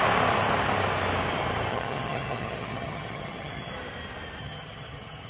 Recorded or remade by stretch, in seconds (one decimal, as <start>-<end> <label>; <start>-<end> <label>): 0.0-1.7 recorded; 1.7-3.7 remade; 3.7-4.4 recorded; 4.4-5.3 remade

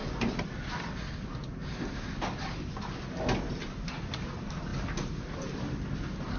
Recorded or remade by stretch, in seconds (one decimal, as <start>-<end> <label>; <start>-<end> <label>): 0.0-6.4 recorded

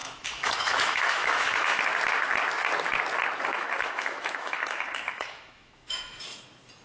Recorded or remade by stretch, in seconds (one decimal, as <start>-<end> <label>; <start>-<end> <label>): 0.0-1.8 remade; 1.8-3.5 recorded; 3.5-6.2 remade; 6.2-6.8 recorded

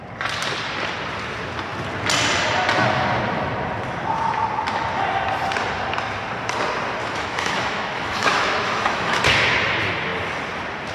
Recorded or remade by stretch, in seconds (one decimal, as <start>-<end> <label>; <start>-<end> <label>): 0.0-7.0 recorded; 7.0-9.2 remade; 9.2-10.9 recorded

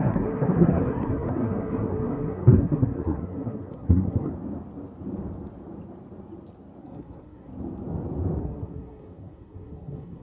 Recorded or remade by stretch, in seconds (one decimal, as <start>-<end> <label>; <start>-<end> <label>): 0.0-4.3 remade; 4.3-6.8 recorded; 6.8-7.5 remade; 7.5-8.4 recorded; 8.4-10.2 remade